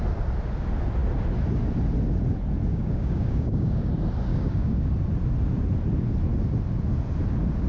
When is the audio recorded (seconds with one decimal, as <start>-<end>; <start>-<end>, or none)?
0.0-2.7; 3.9-4.3; 4.9-7.7